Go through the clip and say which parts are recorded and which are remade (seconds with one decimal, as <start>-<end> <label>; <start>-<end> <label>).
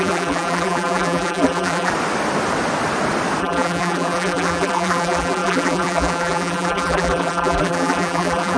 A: 0.0-1.9 remade; 1.9-3.4 recorded; 3.4-8.6 remade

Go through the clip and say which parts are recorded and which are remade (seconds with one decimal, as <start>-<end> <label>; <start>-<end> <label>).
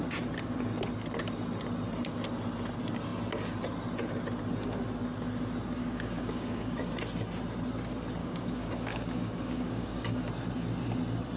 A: 0.0-5.8 recorded; 5.8-6.9 remade; 6.9-8.2 recorded; 8.2-10.3 remade; 10.3-11.4 recorded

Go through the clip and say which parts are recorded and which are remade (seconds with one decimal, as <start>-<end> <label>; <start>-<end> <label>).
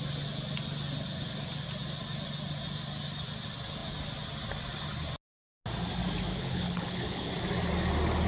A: 0.0-6.3 recorded; 6.3-7.3 remade; 7.3-8.3 recorded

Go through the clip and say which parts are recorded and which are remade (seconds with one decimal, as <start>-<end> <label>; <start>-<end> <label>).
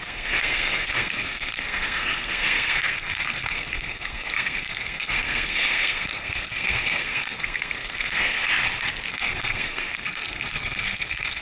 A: 0.0-8.5 remade; 8.5-9.1 recorded; 9.1-11.4 remade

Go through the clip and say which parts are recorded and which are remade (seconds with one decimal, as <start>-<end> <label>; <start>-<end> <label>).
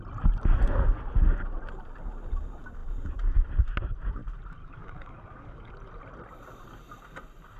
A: 0.0-4.6 recorded; 4.6-5.7 remade; 5.7-7.6 recorded